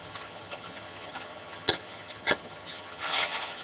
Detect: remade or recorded remade